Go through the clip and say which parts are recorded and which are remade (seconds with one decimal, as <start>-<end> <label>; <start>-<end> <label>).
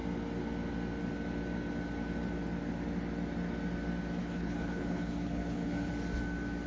0.0-4.2 recorded; 4.2-5.9 remade; 5.9-6.7 recorded